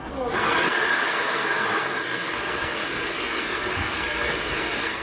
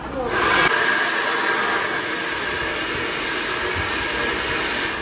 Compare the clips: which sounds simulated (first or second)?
first